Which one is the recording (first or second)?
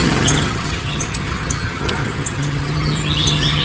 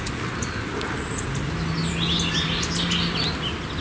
second